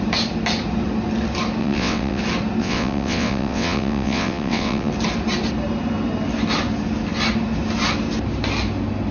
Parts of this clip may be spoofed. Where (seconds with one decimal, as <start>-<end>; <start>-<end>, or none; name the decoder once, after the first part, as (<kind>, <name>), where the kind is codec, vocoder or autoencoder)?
1.6-2.2 (vocoder, WaveNeXt); 2.6-4.9